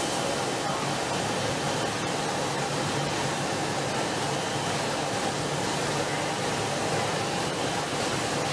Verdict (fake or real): real